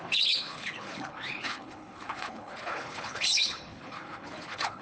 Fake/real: fake